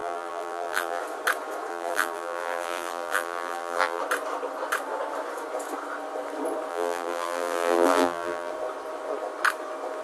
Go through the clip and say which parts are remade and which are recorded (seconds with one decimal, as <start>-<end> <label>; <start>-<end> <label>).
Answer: 0.0-1.0 remade; 1.0-1.7 recorded; 1.7-4.0 remade; 4.0-6.7 recorded; 6.7-8.5 remade; 8.5-10.0 recorded